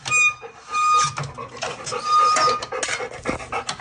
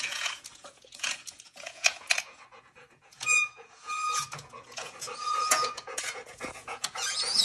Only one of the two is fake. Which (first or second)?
second